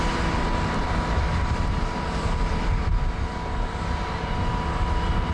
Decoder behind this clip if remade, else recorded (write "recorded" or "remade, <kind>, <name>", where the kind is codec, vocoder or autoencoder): recorded